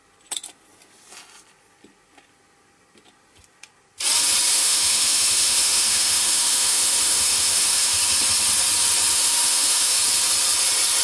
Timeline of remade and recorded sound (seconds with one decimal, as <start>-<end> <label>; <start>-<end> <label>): 0.0-4.5 recorded; 4.5-8.0 remade; 8.0-9.1 recorded; 9.1-10.0 remade; 10.0-11.0 recorded